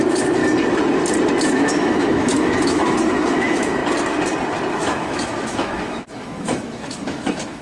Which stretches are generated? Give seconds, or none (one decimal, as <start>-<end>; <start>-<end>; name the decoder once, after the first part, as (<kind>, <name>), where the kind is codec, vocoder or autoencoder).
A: 0.0-0.4 (autoencoder, DAC-VAE); 1.4-3.8; 4.7-7.6